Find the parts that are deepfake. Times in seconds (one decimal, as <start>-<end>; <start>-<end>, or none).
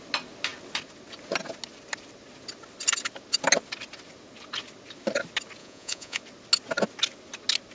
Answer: 5.6-6.2